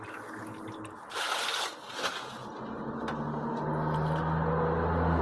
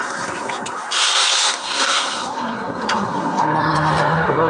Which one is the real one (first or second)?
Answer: first